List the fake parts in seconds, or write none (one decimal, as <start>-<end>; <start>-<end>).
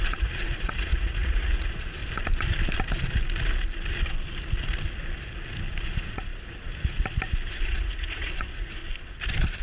0.0-2.0; 5.8-6.3; 7.6-8.8